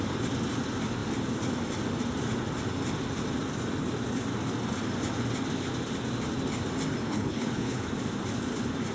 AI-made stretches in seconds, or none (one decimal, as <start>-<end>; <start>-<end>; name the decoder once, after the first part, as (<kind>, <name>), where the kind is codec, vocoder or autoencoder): 7.0-7.9 (codec, HILCodec)